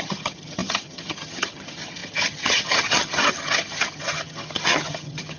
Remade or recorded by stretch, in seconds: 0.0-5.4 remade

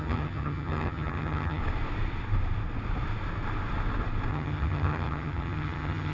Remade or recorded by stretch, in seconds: 0.0-1.6 remade; 1.6-4.3 recorded; 4.3-6.1 remade

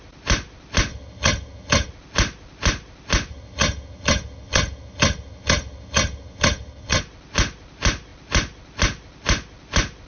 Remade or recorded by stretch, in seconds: 0.0-0.9 recorded; 0.9-1.9 remade; 1.9-3.3 recorded; 3.3-7.0 remade; 7.0-10.1 recorded

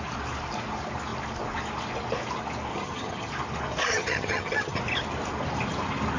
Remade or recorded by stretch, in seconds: 0.0-2.7 recorded; 2.7-3.3 remade; 3.3-3.9 recorded; 3.9-4.8 remade; 4.8-6.2 recorded

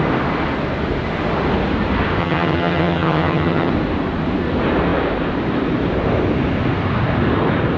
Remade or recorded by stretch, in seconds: 0.0-2.2 recorded; 2.2-3.7 remade; 3.7-7.8 recorded